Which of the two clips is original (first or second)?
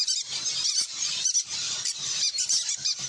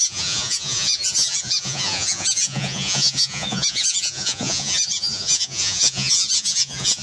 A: first